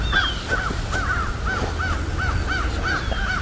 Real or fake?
real